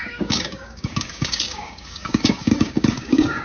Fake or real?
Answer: fake